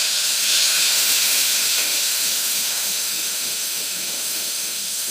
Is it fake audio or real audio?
fake